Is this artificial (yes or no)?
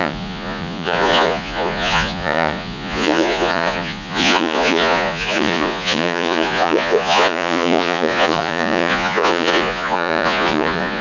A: yes